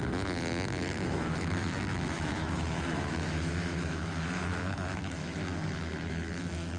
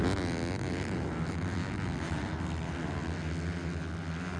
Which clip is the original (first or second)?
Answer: second